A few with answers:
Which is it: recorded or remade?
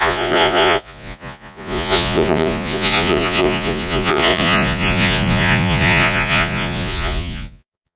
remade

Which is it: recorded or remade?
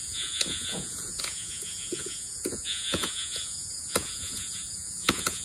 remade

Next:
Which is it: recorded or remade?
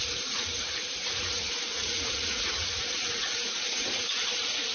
remade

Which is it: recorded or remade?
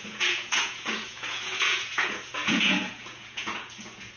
remade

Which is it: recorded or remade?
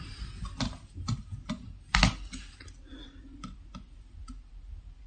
recorded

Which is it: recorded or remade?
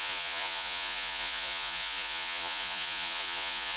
remade